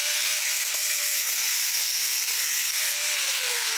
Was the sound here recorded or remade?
remade